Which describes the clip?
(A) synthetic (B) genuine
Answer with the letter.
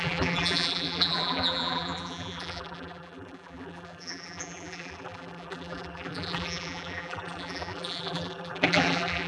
A